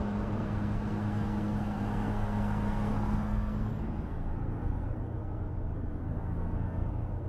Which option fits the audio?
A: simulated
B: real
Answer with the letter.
A